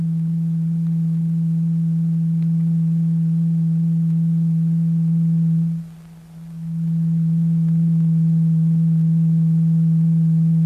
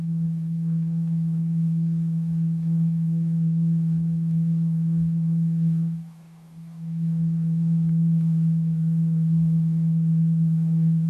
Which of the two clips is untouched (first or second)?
first